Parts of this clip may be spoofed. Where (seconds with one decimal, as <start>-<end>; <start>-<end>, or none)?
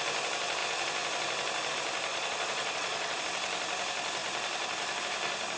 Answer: 2.1-3.2